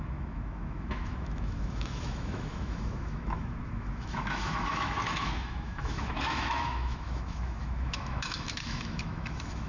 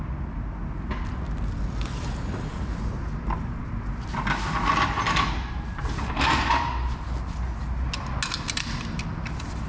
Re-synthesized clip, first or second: first